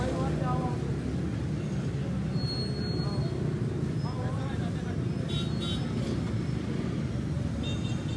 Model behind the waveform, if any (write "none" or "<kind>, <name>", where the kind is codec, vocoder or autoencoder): none